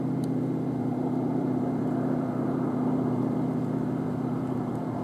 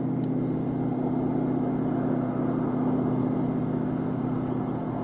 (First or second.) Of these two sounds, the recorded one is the second